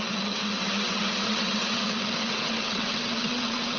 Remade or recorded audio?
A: remade